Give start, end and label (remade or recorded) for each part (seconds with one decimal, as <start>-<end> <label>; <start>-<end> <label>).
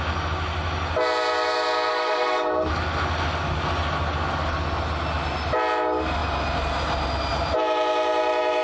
0.0-1.9 recorded; 1.9-2.7 remade; 2.7-8.6 recorded